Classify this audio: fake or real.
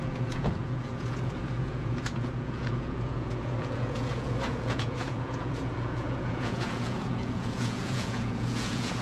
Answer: fake